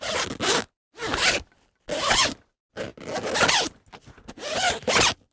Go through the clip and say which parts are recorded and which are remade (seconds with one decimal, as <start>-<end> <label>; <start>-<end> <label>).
0.0-5.3 recorded